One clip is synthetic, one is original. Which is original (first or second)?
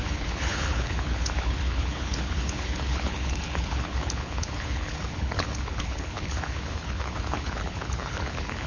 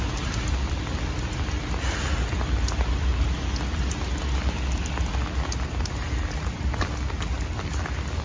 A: second